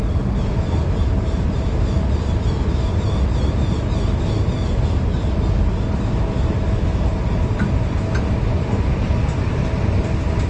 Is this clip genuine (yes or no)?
yes